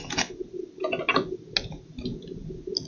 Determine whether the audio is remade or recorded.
recorded